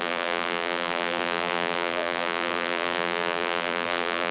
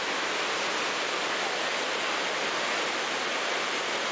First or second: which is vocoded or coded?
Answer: first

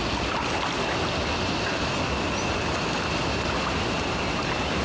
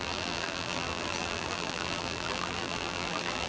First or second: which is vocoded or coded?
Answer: second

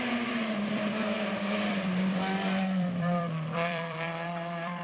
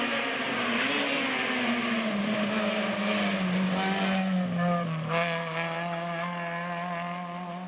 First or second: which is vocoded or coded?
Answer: first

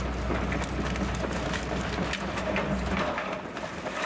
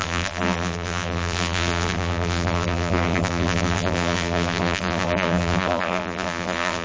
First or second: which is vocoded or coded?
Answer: second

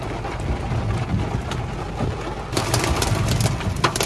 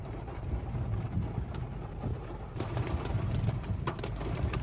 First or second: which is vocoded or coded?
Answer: second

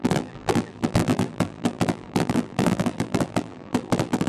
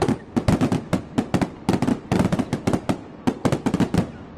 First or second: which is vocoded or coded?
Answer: first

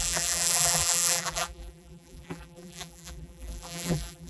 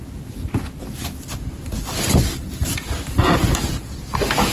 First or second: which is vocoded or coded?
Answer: first